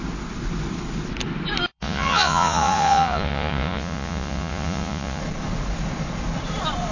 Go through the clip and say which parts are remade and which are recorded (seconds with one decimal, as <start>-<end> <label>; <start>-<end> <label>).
0.0-1.7 recorded; 1.7-5.2 remade; 5.2-6.9 recorded